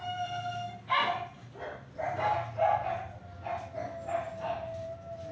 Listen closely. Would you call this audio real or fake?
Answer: real